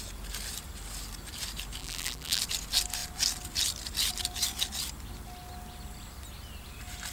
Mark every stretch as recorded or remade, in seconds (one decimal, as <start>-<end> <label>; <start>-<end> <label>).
0.0-1.8 recorded; 1.8-2.4 remade; 2.4-7.1 recorded